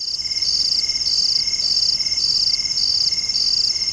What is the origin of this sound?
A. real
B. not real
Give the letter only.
A